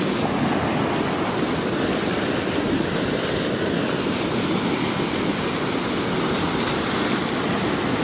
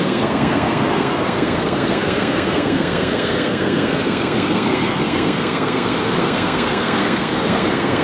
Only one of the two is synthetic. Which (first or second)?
second